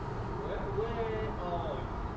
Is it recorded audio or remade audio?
recorded